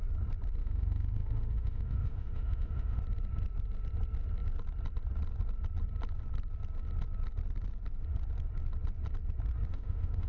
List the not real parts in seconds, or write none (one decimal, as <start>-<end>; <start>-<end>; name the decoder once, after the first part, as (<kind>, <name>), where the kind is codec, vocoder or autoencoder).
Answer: 0.6-3.0 (autoencoder, DAC-VAE); 9.7-10.3